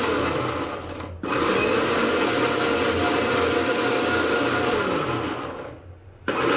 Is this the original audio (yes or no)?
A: yes